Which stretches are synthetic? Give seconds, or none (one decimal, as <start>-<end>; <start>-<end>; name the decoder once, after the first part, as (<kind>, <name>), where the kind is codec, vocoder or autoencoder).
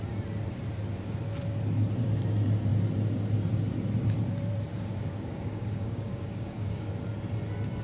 4.7-7.0 (codec, DAC)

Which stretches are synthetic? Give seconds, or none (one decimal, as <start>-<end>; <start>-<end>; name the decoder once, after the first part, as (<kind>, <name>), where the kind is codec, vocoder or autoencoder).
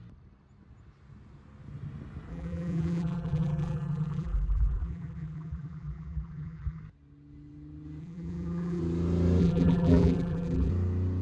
2.3-6.8 (vocoder, BigVGAN v2); 8.0-8.8; 9.4-10.7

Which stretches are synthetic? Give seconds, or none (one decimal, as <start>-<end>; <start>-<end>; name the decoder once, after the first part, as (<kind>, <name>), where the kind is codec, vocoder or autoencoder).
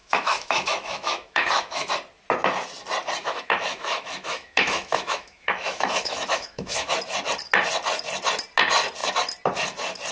0.0-1.9 (autoencoder, DAC-VAE); 3.2-6.9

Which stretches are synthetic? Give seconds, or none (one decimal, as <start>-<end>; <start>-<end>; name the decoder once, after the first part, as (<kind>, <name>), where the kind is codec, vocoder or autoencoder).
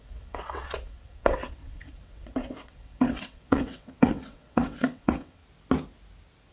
0.0-5.4 (vocoder, WaveNeXt)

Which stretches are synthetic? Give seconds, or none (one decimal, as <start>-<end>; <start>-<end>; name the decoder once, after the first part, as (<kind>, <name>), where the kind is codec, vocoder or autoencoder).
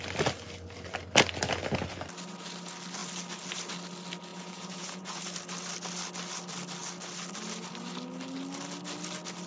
4.3-5.2 (vocoder, Vocos)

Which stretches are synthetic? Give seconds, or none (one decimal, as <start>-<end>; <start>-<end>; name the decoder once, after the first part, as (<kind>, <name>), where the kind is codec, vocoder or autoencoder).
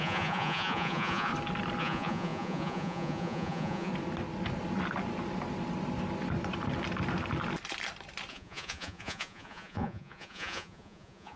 0.0-1.3 (vocoder, Vocos); 1.8-3.9; 8.3-11.4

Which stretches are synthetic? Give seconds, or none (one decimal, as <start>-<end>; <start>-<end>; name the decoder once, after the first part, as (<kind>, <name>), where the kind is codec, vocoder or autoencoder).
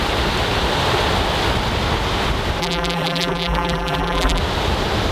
2.6-4.4 (vocoder, BigVGAN v2)